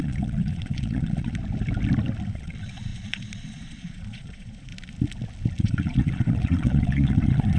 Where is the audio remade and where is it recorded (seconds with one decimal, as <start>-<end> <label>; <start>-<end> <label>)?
0.0-1.4 remade; 1.4-2.3 recorded; 2.3-4.7 remade; 4.7-5.6 recorded; 5.6-7.6 remade